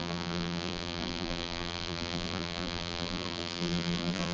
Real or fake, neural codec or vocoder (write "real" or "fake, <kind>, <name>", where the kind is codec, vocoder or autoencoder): fake, vocoder, BigVGAN v2